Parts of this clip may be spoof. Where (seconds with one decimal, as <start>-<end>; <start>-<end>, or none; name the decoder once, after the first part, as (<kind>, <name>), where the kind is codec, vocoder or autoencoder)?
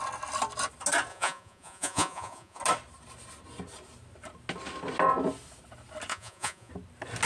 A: 1.1-2.6 (vocoder, Vocos); 6.1-6.7